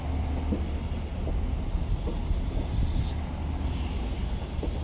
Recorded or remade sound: recorded